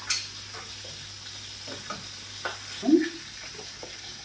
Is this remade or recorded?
recorded